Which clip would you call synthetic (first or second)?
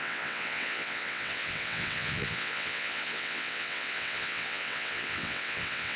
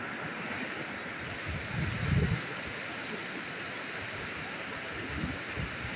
first